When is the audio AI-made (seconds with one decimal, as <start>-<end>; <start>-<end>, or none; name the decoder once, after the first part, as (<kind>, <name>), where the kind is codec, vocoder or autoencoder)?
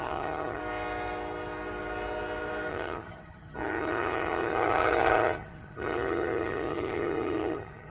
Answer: 0.0-0.6 (vocoder, HiFi-GAN); 2.7-7.9